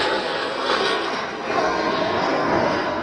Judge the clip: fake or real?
fake